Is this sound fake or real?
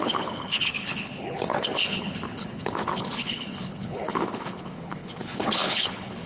fake